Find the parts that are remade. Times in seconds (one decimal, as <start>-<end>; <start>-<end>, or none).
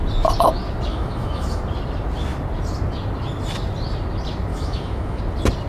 0.9-1.6; 4.5-5.2